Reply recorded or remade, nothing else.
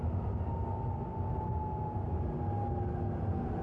recorded